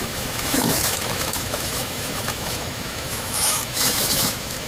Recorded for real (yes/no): no